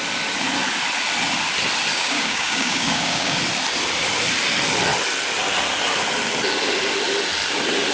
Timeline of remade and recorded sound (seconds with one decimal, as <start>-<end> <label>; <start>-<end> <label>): 0.0-1.9 recorded; 1.9-3.4 remade; 3.4-7.9 recorded